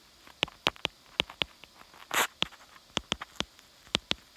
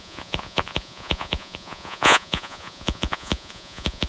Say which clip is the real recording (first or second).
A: first